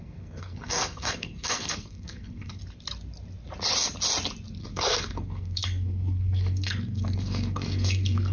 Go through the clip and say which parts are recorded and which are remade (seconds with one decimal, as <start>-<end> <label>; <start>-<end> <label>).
0.0-2.6 remade; 2.6-4.6 recorded; 4.6-8.3 remade